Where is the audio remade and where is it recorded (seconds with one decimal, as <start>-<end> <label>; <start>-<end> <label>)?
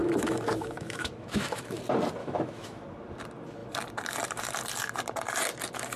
0.0-1.8 remade; 1.8-2.2 recorded; 2.2-2.8 remade; 2.8-6.0 recorded